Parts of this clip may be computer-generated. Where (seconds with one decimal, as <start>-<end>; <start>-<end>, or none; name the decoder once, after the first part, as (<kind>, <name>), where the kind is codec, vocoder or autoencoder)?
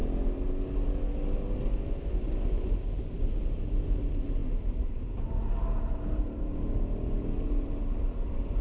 3.0-8.6 (vocoder, BigVGAN v2)